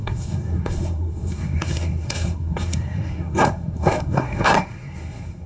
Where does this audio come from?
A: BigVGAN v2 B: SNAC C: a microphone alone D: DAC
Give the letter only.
B